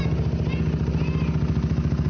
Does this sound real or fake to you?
real